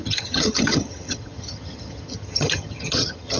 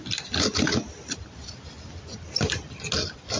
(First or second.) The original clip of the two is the second